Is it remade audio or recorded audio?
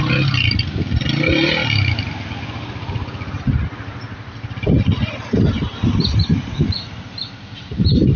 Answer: recorded